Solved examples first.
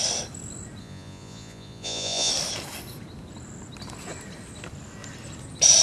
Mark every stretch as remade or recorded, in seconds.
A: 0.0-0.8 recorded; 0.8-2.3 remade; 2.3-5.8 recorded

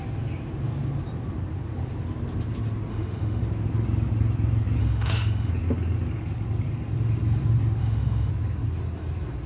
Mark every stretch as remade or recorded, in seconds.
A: 0.0-2.9 recorded; 2.9-3.4 remade; 3.4-4.8 recorded; 4.8-5.5 remade; 5.5-7.8 recorded; 7.8-8.3 remade; 8.3-9.5 recorded

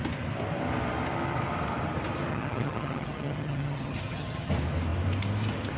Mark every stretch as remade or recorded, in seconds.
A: 0.0-2.3 recorded; 2.3-4.5 remade; 4.5-5.8 recorded

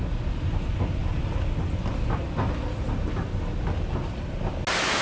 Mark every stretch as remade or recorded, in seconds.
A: 0.0-5.0 recorded

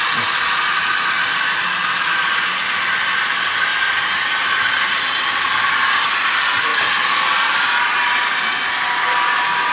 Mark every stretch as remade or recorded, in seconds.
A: 0.0-9.7 recorded

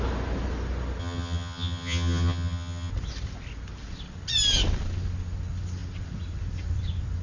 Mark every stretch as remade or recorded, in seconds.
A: 0.0-1.0 recorded; 1.0-2.9 remade; 2.9-7.2 recorded

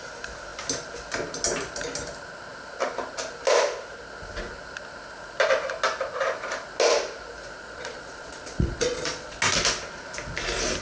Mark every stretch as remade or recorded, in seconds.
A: 0.0-7.6 recorded; 7.6-9.4 remade; 9.4-10.8 recorded

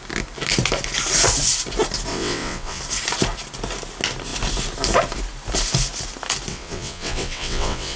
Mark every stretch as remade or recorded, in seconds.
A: 0.0-2.1 recorded; 2.1-2.8 remade; 2.8-6.5 recorded; 6.5-8.0 remade